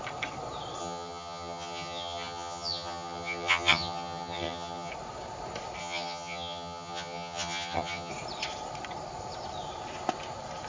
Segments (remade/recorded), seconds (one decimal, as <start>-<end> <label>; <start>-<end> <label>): 0.0-0.8 recorded; 0.8-4.9 remade; 4.9-5.8 recorded; 5.8-8.1 remade; 8.1-10.7 recorded